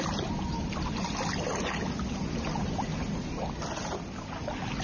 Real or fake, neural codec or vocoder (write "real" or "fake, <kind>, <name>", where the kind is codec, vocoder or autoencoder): real